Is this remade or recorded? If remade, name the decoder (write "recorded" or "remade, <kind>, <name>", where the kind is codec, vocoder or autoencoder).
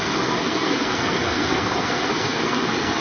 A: remade, codec, SNAC